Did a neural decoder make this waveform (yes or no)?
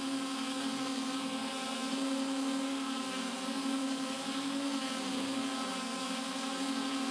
yes